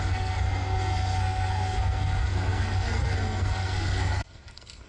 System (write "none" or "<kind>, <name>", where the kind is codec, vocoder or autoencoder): codec, SNAC